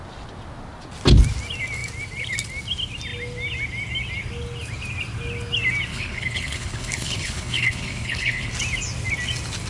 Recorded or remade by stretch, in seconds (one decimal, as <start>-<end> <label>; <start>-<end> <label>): 0.0-5.9 recorded; 5.9-8.5 remade; 8.5-9.7 recorded